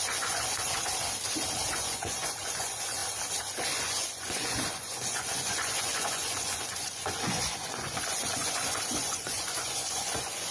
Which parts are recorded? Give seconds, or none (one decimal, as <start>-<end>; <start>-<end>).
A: 0.9-1.7; 3.0-3.8